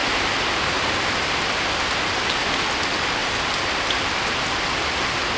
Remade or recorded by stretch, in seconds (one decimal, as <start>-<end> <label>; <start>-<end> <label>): 0.0-3.2 recorded; 3.2-4.1 remade; 4.1-5.4 recorded